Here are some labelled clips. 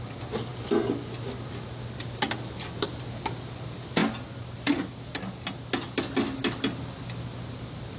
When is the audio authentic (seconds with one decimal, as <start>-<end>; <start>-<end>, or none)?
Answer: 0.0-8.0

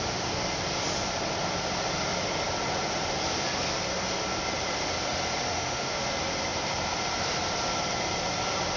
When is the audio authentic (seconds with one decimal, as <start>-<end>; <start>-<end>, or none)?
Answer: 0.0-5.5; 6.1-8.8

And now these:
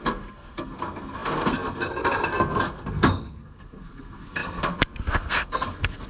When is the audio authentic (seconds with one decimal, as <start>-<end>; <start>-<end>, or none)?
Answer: none